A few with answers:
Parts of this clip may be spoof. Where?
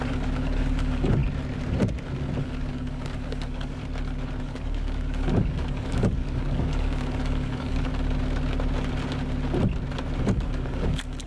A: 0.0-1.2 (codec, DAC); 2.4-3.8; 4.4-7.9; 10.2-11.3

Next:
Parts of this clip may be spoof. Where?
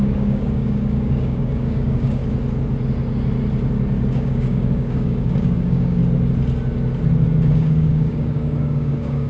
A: 0.0-2.2 (codec, DAC); 4.1-6.0; 7.5-9.3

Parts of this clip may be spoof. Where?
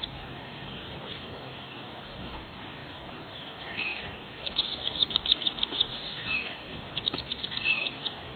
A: 0.0-8.4 (codec, DAC)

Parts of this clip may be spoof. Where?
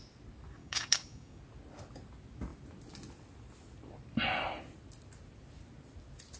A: 0.6-1.4 (codec, DAC)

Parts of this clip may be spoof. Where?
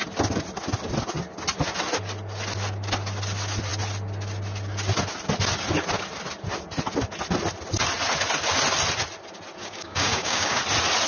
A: 9.6-10.6 (codec, DAC)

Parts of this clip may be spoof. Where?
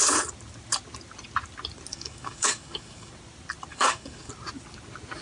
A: 1.9-3.1 (codec, DAC); 3.7-4.3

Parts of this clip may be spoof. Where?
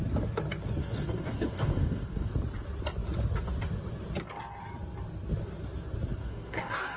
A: 0.8-2.3 (codec, DAC); 6.2-7.0